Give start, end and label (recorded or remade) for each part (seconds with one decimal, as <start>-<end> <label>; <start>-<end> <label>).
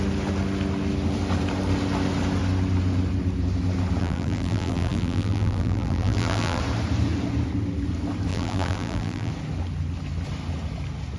0.0-4.0 recorded; 4.0-6.6 remade; 6.6-8.3 recorded; 8.3-9.3 remade; 9.3-11.2 recorded